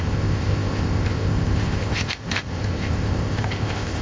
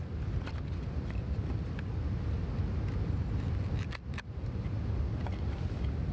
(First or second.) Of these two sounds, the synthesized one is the first